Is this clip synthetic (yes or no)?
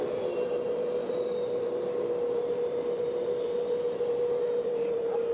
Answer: yes